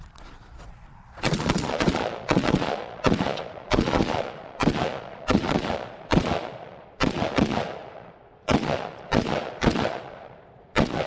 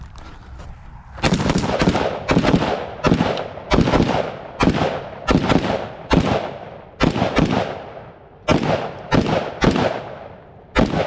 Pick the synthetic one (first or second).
first